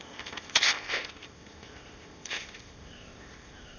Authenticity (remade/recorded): remade